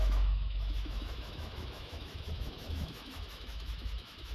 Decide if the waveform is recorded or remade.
remade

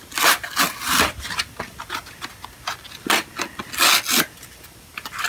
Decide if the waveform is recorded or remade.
recorded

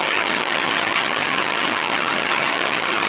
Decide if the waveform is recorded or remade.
remade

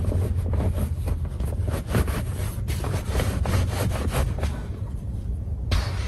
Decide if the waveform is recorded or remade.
recorded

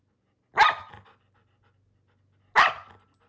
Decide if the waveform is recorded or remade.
recorded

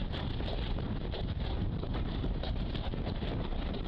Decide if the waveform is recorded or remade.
remade